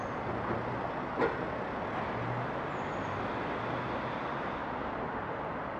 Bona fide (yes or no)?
yes